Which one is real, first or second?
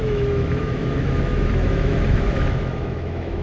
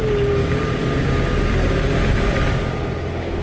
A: second